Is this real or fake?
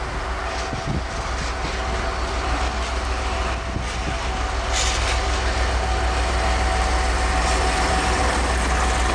real